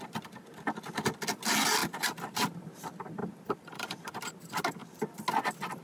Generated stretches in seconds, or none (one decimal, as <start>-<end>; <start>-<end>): 1.8-2.5; 3.2-4.3